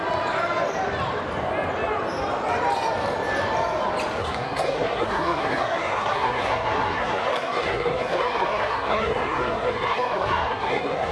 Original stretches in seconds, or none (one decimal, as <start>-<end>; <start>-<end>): 0.0-4.2